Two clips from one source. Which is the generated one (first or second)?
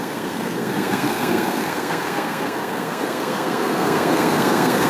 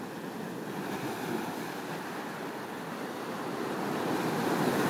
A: first